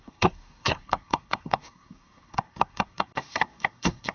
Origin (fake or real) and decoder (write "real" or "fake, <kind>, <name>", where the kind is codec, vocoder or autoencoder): fake, codec, SNAC